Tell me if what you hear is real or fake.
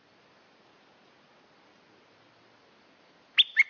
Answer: real